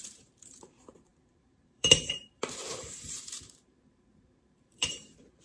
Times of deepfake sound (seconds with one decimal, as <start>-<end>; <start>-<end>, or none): 0.0-5.4